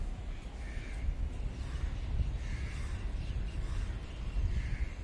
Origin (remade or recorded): recorded